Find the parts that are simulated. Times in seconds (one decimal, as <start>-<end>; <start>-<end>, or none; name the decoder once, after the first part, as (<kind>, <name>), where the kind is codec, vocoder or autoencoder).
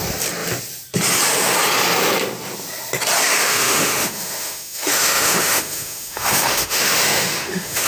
3.4-7.9 (autoencoder, DAC-VAE)